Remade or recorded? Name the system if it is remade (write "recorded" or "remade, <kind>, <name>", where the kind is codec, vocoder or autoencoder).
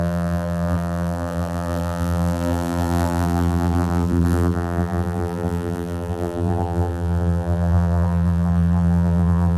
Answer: remade, vocoder, BigVGAN v2